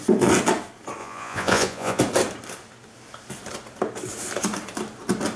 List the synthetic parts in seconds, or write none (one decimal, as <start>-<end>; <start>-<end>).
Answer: 1.0-2.0